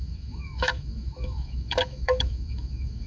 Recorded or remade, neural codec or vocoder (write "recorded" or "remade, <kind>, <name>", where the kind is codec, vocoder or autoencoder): remade, autoencoder, DAC-VAE